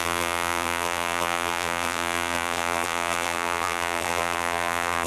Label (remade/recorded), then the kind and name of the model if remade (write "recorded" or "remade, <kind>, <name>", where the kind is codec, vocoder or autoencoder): remade, vocoder, BigVGAN v2